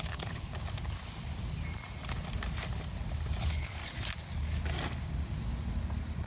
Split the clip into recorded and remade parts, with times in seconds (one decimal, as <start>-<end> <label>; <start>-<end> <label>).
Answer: 0.0-0.5 remade; 0.5-3.4 recorded; 3.4-3.8 remade; 3.8-6.3 recorded